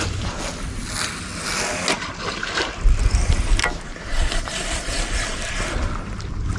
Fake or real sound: real